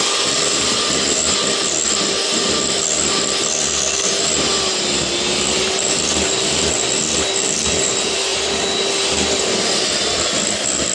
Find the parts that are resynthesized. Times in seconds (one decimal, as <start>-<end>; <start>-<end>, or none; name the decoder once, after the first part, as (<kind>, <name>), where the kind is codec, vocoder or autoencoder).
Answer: none